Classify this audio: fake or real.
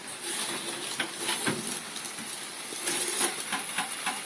real